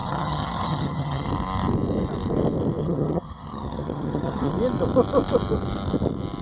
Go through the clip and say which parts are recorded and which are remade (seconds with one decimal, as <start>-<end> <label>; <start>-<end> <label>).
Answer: 0.0-1.3 remade; 1.3-2.8 recorded; 2.8-4.5 remade; 4.5-6.4 recorded